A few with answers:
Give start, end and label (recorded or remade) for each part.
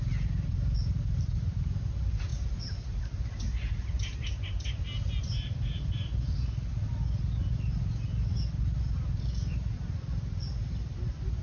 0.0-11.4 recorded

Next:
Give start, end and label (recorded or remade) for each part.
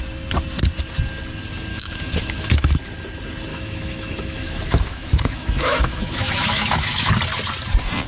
0.0-1.7 recorded; 1.7-2.7 remade; 2.7-3.5 recorded; 3.5-7.1 remade; 7.1-8.1 recorded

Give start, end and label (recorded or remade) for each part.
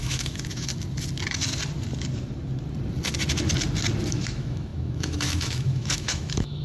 0.0-0.7 remade; 0.7-4.1 recorded; 4.1-6.6 remade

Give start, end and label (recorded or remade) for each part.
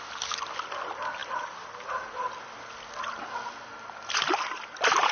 0.0-1.2 recorded; 1.2-2.9 remade; 2.9-3.7 recorded; 3.7-5.1 remade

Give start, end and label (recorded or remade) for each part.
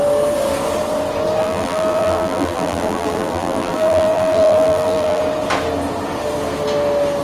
0.0-1.4 recorded; 1.4-5.2 remade; 5.2-7.2 recorded